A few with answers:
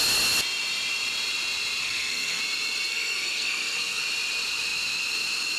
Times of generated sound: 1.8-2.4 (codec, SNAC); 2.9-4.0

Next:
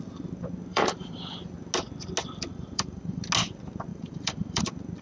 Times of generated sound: 0.7-1.2 (vocoder, BigVGAN v2); 2.5-3.2; 3.9-4.6

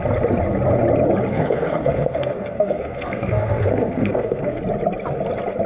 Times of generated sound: 1.3-4.6 (codec, SNAC)

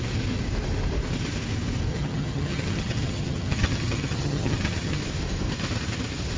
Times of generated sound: 1.9-5.0 (vocoder, HiFi-GAN)

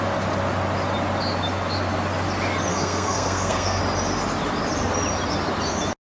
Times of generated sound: 2.7-3.8 (codec, SNAC)

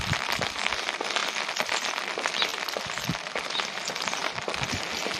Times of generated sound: 4.2-4.8 (vocoder, BigVGAN v2)